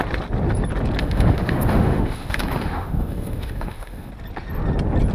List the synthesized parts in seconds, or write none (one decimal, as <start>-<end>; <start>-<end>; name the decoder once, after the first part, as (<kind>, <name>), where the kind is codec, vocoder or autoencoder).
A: 1.0-4.1 (autoencoder, DAC-VAE)